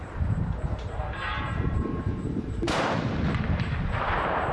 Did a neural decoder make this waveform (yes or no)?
yes